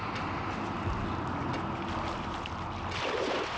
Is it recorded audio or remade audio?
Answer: recorded